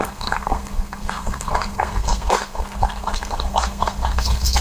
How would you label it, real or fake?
fake